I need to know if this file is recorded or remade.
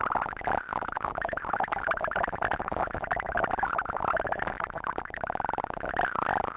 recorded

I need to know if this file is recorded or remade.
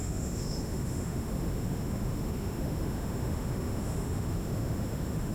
remade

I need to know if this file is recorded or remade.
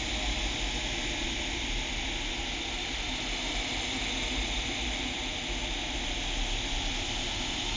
recorded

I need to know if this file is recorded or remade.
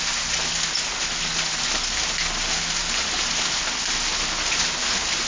recorded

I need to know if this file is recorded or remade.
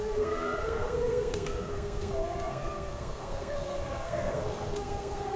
remade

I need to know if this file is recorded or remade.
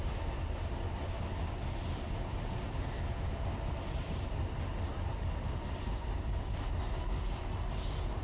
recorded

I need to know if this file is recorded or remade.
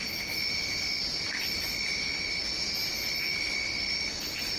recorded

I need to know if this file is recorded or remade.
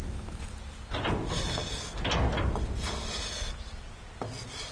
recorded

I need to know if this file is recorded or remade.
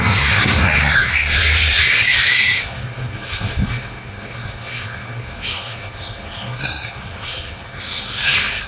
remade